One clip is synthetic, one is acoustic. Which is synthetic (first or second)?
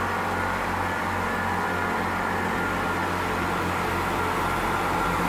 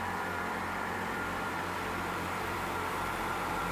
second